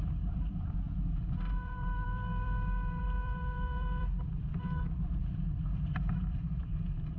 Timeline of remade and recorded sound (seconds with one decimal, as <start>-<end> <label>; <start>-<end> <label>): 0.0-7.2 remade